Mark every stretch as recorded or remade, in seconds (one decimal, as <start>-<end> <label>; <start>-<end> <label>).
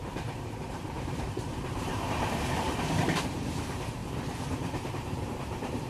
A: 0.0-4.0 remade; 4.0-4.9 recorded; 4.9-5.9 remade